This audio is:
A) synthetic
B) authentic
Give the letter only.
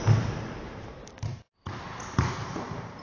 A